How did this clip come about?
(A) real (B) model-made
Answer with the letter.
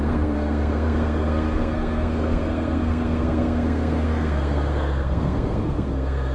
B